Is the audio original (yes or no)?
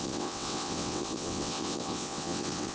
no